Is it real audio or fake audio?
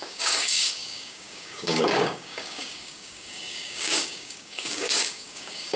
fake